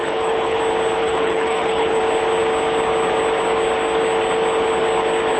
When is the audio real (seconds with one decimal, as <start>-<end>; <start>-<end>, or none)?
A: 0.6-1.0; 2.0-5.4